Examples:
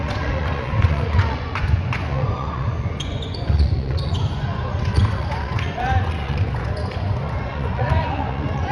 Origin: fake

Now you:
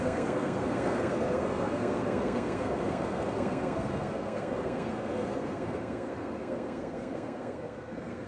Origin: fake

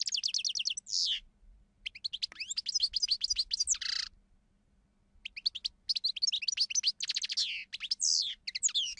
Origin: real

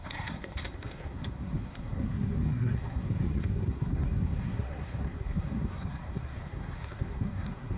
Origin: fake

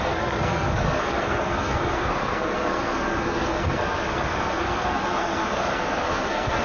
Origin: fake